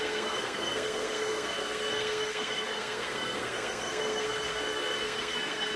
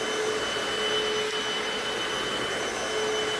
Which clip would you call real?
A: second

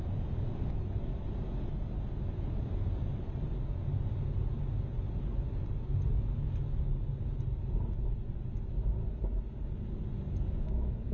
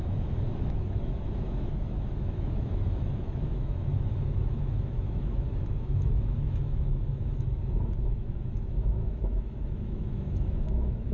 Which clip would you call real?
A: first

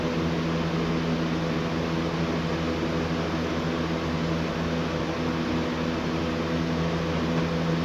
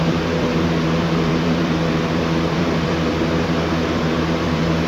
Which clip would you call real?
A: first